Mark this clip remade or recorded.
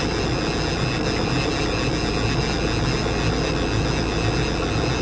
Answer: recorded